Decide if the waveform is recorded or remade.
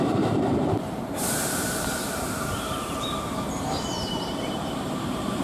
remade